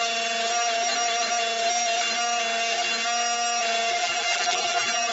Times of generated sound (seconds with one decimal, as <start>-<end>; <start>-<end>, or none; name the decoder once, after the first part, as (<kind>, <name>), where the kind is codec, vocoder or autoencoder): 4.0-5.1 (vocoder, BigVGAN v2)